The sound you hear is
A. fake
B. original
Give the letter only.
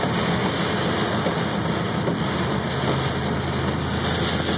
B